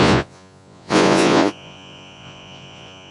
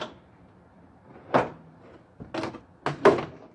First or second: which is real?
second